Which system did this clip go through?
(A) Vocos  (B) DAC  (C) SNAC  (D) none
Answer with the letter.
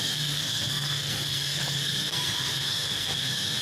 C